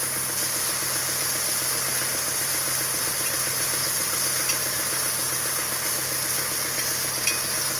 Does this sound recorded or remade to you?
recorded